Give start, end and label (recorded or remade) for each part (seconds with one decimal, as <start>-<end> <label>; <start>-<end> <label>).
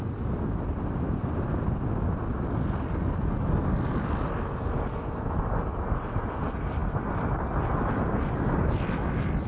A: 0.0-9.5 recorded